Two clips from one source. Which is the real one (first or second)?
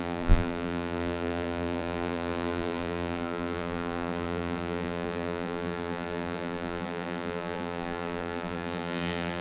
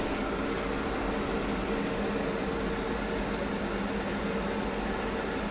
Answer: second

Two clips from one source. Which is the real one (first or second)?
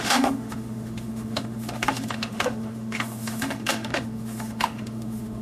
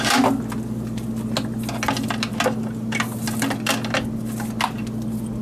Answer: second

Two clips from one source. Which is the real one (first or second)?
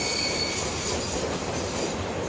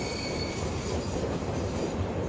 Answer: first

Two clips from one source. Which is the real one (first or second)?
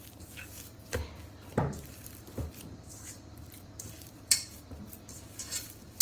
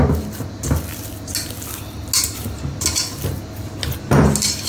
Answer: second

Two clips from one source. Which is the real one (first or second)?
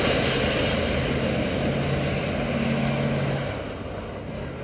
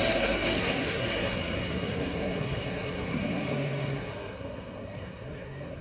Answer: first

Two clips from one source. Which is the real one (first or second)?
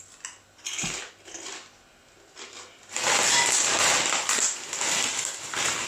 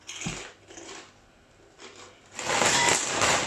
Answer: first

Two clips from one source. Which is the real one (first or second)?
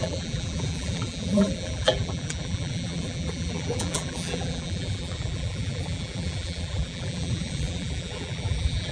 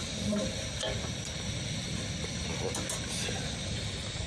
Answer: second